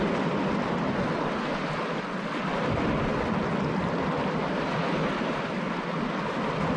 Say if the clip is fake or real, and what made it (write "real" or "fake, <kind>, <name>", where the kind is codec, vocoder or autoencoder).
real